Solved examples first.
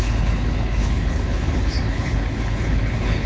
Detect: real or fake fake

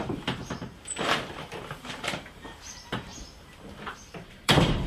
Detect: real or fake fake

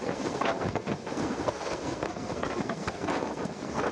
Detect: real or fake fake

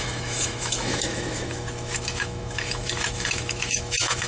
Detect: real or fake fake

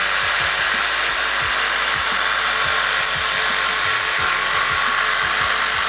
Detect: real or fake real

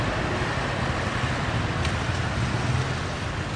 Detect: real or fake real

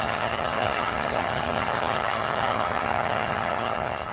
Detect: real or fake fake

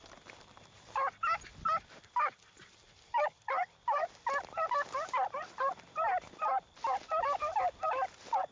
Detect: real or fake real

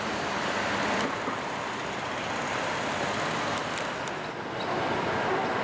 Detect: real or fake real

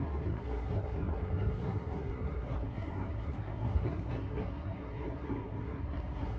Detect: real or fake fake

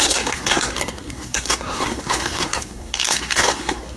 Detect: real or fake fake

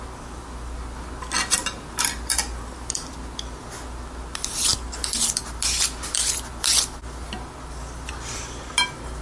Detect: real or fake real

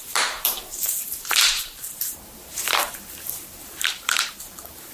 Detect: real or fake fake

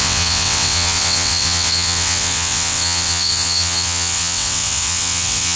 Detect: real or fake fake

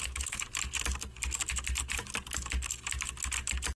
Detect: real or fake real